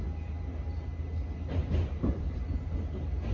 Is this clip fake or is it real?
real